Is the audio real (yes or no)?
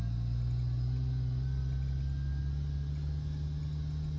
yes